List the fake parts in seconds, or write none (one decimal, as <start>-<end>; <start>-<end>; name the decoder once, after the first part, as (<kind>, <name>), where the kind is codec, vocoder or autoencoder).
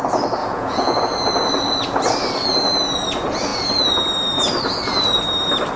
0.4-1.0 (vocoder, Vocos)